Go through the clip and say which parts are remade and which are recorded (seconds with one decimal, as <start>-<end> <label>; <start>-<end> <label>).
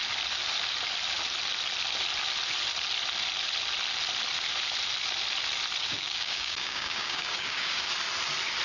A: 0.0-5.8 recorded; 5.8-7.9 remade; 7.9-8.6 recorded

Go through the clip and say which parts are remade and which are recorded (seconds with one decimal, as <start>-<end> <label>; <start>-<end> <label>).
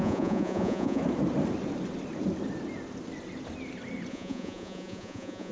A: 0.0-1.0 remade; 1.0-4.1 recorded; 4.1-5.5 remade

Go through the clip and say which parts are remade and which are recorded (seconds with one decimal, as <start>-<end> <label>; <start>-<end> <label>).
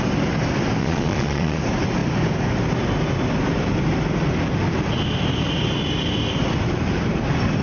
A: 0.0-0.8 recorded; 0.8-1.6 remade; 1.6-7.6 recorded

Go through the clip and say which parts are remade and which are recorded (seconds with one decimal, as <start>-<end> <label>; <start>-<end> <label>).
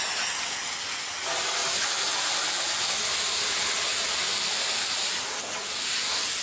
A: 0.0-6.4 recorded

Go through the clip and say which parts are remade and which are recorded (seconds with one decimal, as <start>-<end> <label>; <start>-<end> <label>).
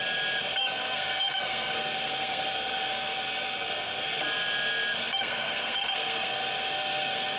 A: 0.0-0.6 recorded; 0.6-4.2 remade; 4.2-5.0 recorded; 5.0-7.4 remade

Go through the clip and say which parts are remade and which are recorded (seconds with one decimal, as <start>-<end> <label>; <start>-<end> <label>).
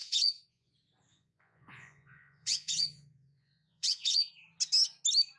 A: 0.0-0.7 remade; 0.7-1.1 recorded; 1.1-4.3 remade; 4.3-5.4 recorded